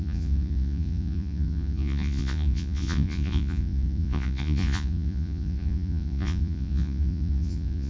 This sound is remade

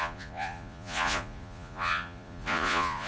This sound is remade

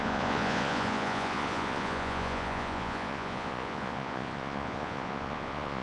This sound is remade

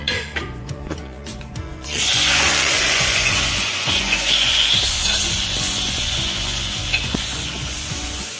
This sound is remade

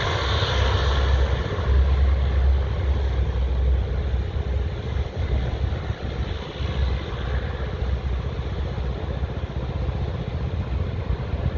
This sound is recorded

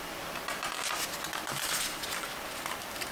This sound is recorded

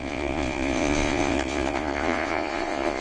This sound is remade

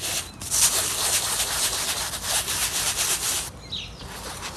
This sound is recorded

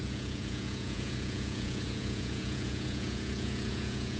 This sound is remade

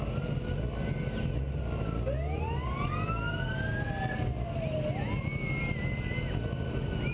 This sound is recorded